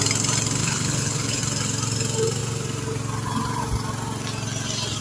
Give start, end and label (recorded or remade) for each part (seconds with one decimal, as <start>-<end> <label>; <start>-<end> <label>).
0.0-0.6 recorded; 0.6-1.4 remade; 1.4-5.0 recorded